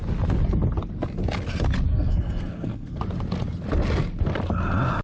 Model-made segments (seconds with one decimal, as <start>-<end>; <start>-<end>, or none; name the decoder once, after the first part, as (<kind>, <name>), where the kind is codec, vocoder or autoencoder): 1.9-3.0 (codec, SNAC)